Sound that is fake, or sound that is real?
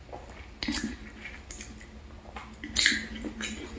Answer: real